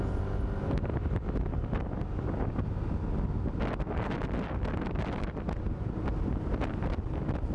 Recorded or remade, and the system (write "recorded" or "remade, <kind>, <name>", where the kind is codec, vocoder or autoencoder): recorded